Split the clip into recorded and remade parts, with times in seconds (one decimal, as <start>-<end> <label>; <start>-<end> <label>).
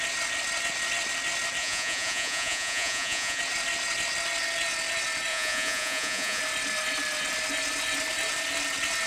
0.0-1.6 recorded; 1.6-3.4 remade; 3.4-5.3 recorded; 5.3-6.4 remade; 6.4-9.1 recorded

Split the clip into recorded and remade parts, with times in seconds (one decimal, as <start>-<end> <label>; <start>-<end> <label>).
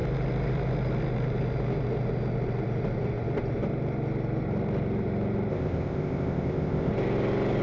0.0-5.5 recorded; 5.5-6.9 remade; 6.9-7.6 recorded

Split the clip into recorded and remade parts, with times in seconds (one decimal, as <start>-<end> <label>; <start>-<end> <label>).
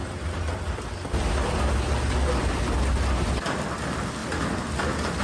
0.0-5.2 recorded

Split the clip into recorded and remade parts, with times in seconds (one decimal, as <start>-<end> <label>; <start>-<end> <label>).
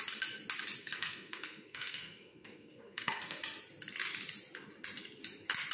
0.0-0.8 recorded; 0.8-3.4 remade; 3.4-5.7 recorded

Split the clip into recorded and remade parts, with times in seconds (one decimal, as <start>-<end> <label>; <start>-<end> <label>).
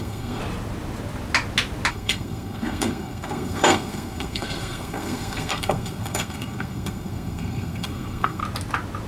0.0-0.4 remade; 0.4-1.9 recorded; 1.9-8.4 remade; 8.4-9.1 recorded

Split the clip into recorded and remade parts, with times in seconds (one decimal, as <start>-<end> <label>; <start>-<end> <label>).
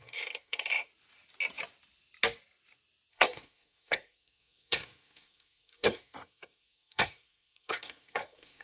0.0-0.9 remade; 0.9-3.1 recorded; 3.1-8.6 remade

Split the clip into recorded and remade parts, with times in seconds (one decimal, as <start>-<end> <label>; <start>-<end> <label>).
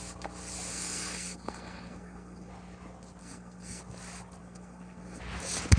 0.0-0.7 recorded; 0.7-2.5 remade; 2.5-3.2 recorded; 3.2-3.8 remade; 3.8-4.4 recorded; 4.4-5.2 remade; 5.2-5.8 recorded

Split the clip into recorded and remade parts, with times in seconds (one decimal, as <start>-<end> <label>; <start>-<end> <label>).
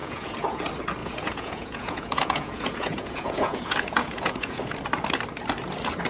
0.0-0.6 remade; 0.6-1.0 recorded; 1.0-4.7 remade; 4.7-6.1 recorded